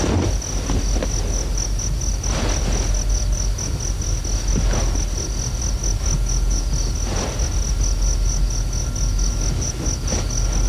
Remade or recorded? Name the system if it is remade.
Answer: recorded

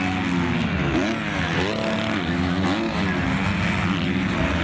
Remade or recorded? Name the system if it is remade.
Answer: recorded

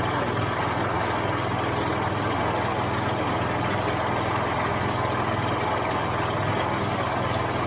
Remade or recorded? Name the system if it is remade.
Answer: recorded